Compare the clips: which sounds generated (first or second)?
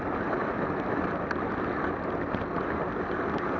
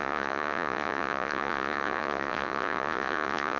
second